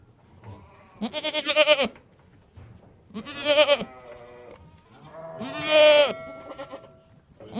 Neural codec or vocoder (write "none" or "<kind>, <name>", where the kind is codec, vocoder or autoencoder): none